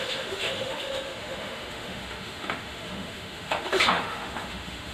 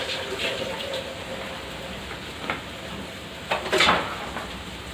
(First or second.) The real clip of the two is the second